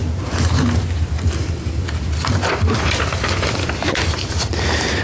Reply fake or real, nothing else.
real